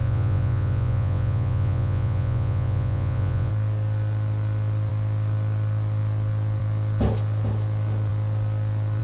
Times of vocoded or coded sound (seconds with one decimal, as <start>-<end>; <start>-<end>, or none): 0.0-3.5